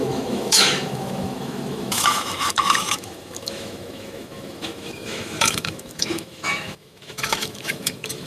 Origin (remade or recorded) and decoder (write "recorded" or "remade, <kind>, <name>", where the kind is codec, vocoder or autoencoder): remade, autoencoder, DAC-VAE